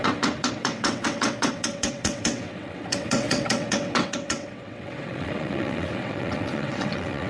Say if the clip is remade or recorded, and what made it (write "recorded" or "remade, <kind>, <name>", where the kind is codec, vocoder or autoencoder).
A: remade, vocoder, WaveNeXt